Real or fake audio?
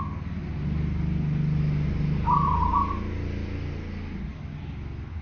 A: real